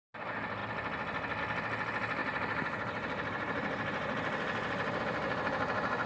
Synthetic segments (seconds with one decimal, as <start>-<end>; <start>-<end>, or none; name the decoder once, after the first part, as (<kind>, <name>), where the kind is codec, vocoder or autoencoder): 2.2-6.1 (vocoder, BigVGAN v2)